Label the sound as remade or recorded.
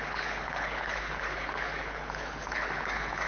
remade